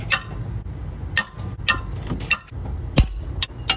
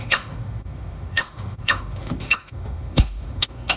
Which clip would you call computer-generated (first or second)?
second